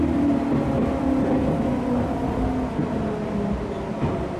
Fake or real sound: real